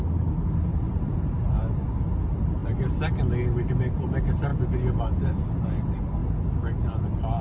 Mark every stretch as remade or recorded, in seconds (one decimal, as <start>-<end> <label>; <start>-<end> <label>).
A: 0.0-0.7 recorded; 0.7-2.0 remade; 2.0-7.4 recorded